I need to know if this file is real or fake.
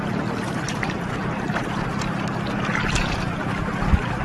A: real